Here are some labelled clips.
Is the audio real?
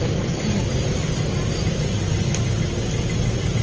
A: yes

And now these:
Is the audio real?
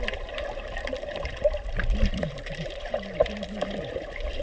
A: no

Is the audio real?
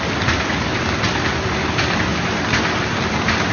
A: yes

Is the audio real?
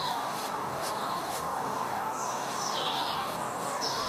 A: no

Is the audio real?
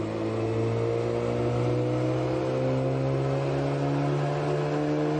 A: yes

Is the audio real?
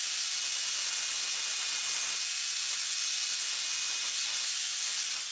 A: yes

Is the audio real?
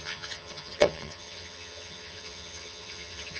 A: no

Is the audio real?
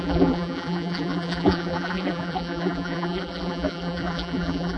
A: no